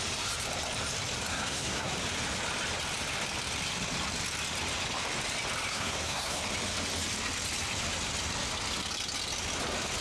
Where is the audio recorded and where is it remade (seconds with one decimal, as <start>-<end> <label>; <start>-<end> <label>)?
0.0-1.3 recorded; 1.3-1.9 remade; 1.9-5.7 recorded; 5.7-6.4 remade; 6.4-10.0 recorded